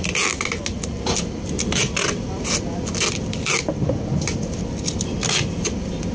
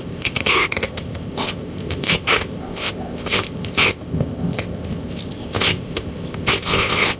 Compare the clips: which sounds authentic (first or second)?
first